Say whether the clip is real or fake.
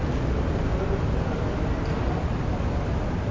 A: real